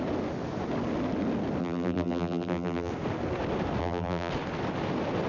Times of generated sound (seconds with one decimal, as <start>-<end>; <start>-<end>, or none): 1.6-2.9; 3.8-4.3